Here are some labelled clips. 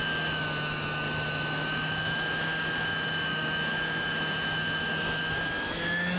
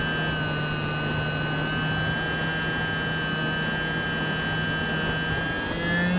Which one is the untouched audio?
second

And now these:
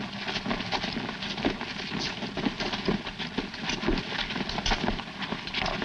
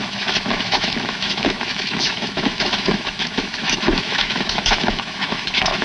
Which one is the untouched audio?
first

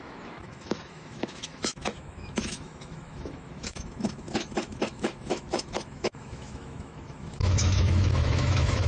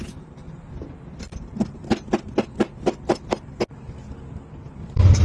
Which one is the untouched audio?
second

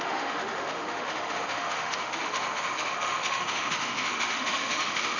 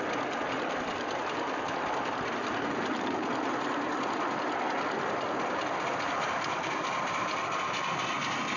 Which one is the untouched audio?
second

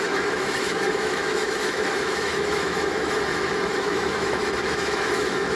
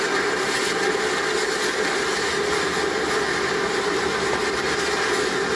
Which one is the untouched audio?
second